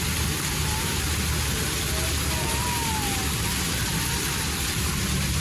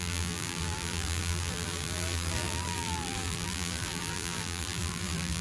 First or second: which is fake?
second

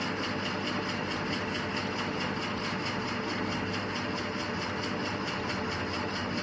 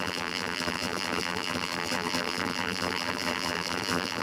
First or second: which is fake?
second